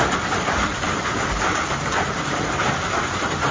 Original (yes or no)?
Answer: no